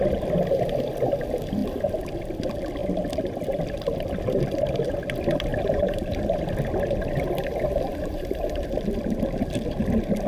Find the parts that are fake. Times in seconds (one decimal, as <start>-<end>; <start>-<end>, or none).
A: 1.6-2.2; 5.5-6.5; 7.9-8.7